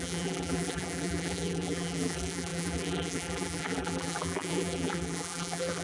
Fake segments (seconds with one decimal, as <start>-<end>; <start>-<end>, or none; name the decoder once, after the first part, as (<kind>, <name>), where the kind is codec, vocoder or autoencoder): 0.0-5.8 (vocoder, BigVGAN v2)